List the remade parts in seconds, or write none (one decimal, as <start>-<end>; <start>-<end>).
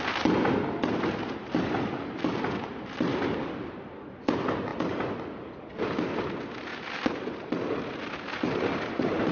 none